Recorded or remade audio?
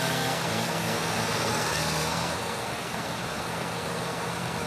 remade